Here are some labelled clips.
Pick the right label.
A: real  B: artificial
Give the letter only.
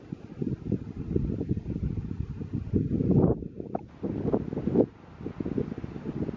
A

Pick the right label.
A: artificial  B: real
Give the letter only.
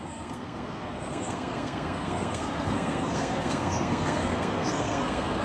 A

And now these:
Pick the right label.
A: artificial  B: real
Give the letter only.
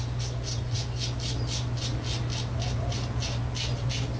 B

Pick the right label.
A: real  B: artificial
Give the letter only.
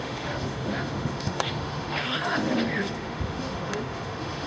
B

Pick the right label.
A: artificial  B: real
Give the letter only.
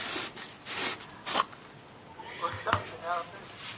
B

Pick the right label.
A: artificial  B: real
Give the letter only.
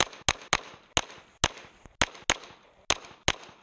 B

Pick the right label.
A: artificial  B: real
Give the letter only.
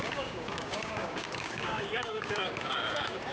A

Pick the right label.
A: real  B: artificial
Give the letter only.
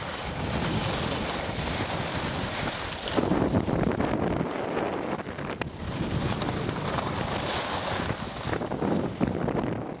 A